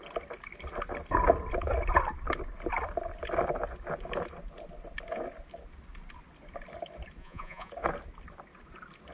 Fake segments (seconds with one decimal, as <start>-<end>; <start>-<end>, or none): 7.2-7.7